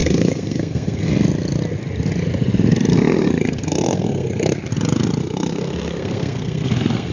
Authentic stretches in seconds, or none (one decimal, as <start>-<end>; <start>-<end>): 1.1-2.9; 4.7-5.2